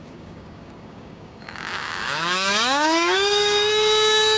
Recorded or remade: remade